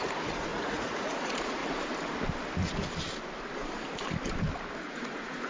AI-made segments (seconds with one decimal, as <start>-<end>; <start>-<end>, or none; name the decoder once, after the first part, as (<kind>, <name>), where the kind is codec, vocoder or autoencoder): 0.0-1.6 (vocoder, Vocos); 4.9-5.5